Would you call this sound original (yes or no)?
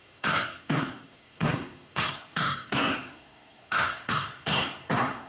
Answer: no